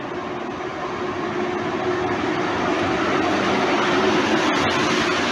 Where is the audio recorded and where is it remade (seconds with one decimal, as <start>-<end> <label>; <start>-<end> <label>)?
0.0-5.3 recorded